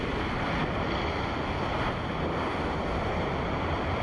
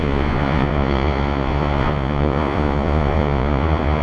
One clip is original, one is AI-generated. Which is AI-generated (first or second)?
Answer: second